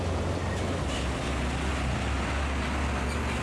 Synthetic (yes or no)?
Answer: no